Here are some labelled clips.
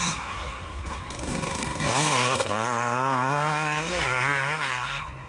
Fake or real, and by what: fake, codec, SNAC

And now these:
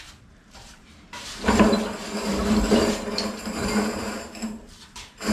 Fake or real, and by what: fake, vocoder, BigVGAN v2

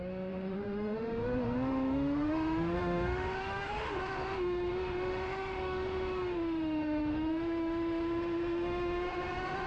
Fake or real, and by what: fake, autoencoder, DAC-VAE